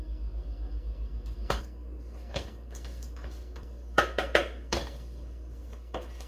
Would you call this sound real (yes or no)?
no